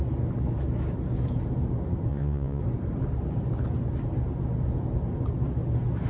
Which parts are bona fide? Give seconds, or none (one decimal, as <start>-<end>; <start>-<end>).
0.0-2.1; 2.6-6.1